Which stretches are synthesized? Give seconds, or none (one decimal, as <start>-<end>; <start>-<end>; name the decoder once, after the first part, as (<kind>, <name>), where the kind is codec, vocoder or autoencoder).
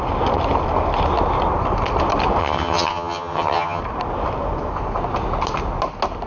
2.4-3.8 (vocoder, HiFi-GAN)